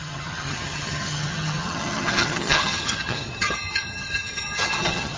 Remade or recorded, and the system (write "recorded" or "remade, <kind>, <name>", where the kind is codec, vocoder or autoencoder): remade, vocoder, HiFi-GAN